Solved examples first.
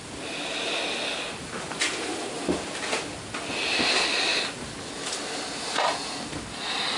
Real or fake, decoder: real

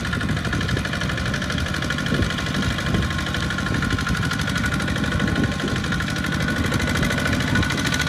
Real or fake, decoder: real